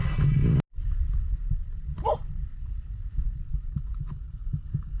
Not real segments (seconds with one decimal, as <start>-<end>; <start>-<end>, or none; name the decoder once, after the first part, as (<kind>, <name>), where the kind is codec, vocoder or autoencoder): none